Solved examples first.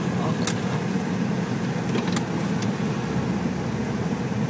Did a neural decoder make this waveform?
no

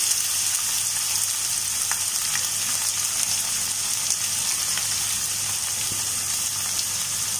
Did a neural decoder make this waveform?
no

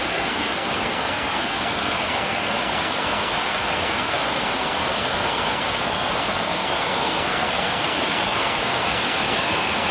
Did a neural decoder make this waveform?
yes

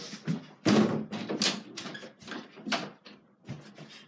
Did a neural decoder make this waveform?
no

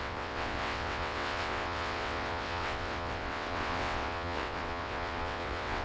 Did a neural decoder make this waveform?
yes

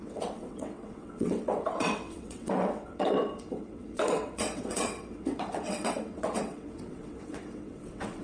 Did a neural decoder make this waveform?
yes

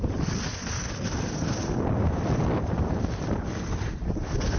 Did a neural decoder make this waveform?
no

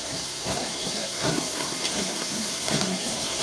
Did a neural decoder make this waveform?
yes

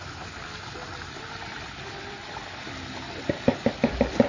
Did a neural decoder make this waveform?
yes